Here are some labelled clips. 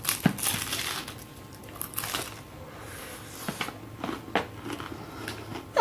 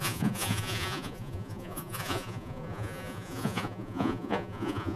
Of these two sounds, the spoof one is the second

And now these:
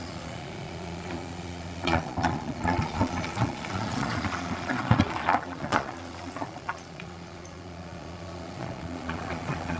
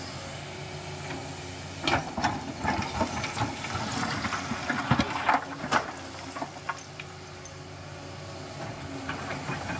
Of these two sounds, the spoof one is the first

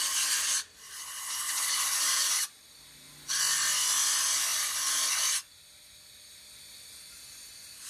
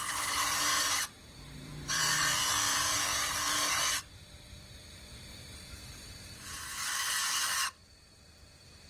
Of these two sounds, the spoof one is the second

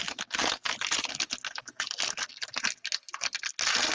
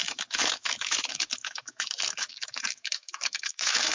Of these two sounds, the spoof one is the second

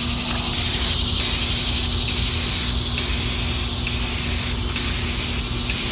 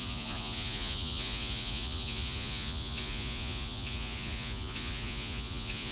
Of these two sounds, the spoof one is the second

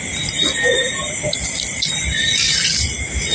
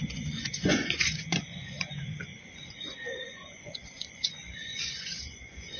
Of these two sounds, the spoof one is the second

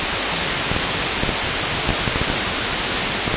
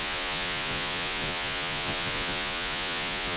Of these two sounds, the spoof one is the second